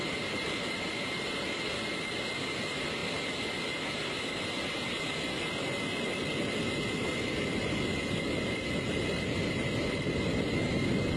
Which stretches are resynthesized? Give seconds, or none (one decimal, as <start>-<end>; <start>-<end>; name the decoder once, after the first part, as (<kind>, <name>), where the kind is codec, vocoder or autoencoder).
3.0-4.4 (vocoder, BigVGAN v2)